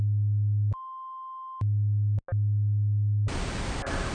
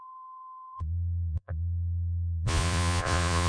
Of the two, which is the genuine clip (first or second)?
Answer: first